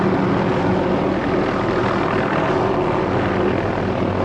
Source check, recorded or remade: recorded